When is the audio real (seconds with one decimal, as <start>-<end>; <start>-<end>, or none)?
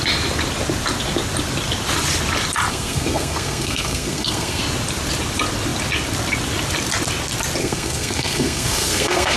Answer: 0.0-2.7; 4.6-7.6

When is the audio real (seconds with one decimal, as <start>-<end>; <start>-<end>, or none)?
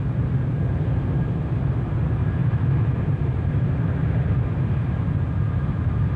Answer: 0.0-6.2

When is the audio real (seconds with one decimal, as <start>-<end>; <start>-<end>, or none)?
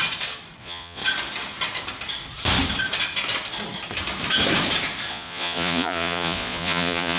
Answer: 0.0-0.6; 1.0-5.1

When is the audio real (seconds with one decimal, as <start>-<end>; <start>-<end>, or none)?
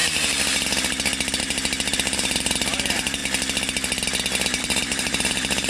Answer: 0.0-1.4; 3.2-4.6